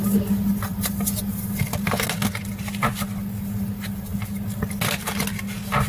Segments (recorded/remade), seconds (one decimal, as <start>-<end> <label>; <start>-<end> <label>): 0.0-5.9 recorded

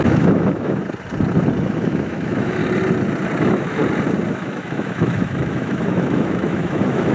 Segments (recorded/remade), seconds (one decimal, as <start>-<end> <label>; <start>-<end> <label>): 0.0-0.8 remade; 0.8-1.6 recorded; 1.6-2.6 remade; 2.6-3.4 recorded; 3.4-3.8 remade; 3.8-4.3 recorded; 4.3-7.1 remade

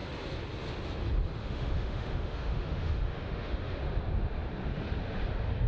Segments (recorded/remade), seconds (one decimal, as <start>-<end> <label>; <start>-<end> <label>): 0.0-1.4 recorded; 1.4-3.8 remade; 3.8-5.7 recorded

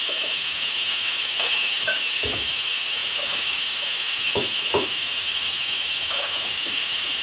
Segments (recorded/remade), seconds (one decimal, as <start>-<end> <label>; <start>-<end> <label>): 0.0-7.2 remade

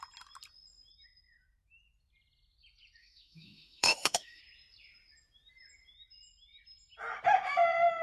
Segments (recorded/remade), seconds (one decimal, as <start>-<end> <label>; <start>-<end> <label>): 0.0-3.0 recorded; 3.0-4.4 remade; 4.4-8.0 recorded

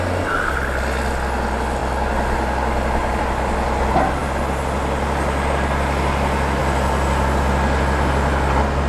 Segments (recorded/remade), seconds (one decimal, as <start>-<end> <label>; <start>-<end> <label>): 0.0-8.9 recorded

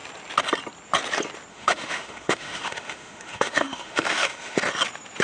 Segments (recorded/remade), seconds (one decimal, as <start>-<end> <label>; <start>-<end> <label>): 0.0-1.5 recorded; 1.5-4.6 remade; 4.6-5.2 recorded

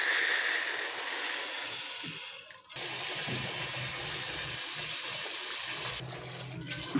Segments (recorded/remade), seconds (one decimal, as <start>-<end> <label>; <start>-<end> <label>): 0.0-7.0 recorded